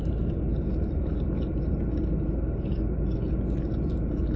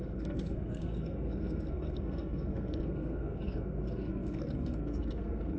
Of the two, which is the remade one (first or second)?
second